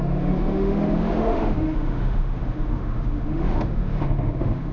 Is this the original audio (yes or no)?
no